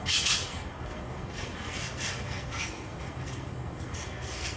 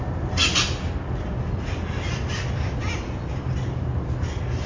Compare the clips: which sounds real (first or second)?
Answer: second